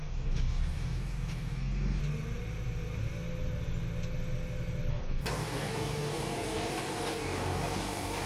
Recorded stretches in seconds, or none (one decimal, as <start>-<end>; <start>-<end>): 2.0-4.9